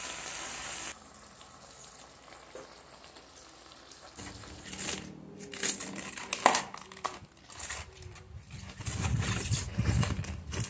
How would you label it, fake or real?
real